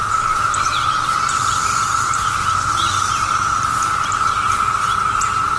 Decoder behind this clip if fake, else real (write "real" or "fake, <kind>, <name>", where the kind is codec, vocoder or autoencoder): fake, vocoder, BigVGAN v2